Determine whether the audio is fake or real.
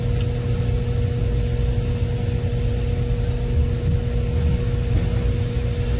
real